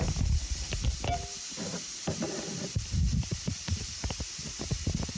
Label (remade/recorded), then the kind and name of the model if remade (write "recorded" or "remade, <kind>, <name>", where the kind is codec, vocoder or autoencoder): remade, vocoder, BigVGAN v2